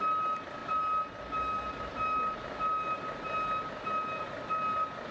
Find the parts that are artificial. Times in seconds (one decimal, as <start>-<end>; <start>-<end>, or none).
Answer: none